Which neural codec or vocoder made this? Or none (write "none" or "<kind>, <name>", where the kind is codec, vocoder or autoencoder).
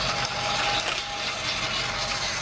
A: none